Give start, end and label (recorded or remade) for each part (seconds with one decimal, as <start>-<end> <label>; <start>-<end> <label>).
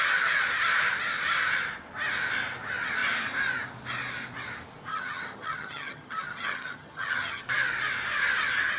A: 0.0-4.9 recorded; 4.9-7.4 remade; 7.4-8.8 recorded